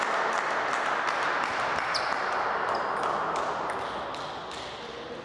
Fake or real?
real